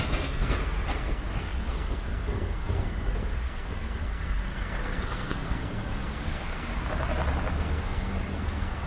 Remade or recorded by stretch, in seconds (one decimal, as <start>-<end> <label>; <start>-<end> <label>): 0.0-6.7 remade; 6.7-7.5 recorded; 7.5-8.9 remade

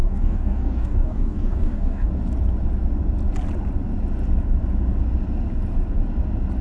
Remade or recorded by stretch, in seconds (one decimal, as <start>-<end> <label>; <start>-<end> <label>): 0.0-2.1 remade; 2.1-6.6 recorded

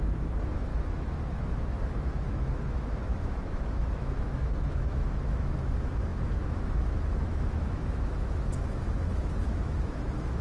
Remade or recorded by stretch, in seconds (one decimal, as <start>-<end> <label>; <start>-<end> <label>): 0.0-10.4 remade